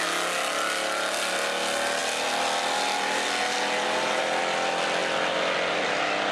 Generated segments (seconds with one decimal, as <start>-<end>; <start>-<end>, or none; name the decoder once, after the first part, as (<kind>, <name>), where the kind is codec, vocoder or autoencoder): none